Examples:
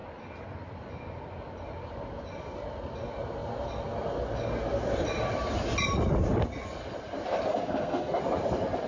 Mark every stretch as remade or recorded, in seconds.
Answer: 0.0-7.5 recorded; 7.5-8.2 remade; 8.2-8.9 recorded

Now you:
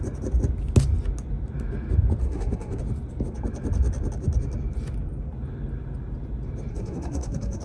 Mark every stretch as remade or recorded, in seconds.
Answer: 0.0-2.2 recorded; 2.2-2.8 remade; 2.8-6.7 recorded; 6.7-7.6 remade

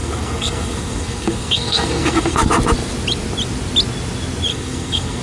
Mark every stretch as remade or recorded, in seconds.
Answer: 0.0-2.5 remade; 2.5-4.5 recorded; 4.5-5.2 remade

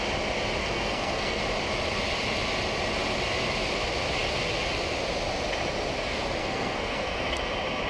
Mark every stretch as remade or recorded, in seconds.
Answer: 0.0-0.6 recorded; 0.6-1.4 remade; 1.4-6.4 recorded; 6.4-7.4 remade; 7.4-7.9 recorded